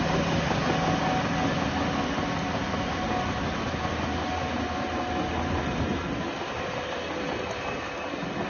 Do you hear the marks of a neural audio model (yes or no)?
no